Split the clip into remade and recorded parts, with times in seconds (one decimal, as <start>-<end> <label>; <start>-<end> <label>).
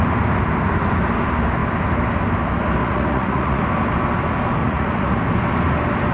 0.0-2.8 recorded; 2.8-3.6 remade; 3.6-4.6 recorded; 4.6-5.2 remade; 5.2-6.1 recorded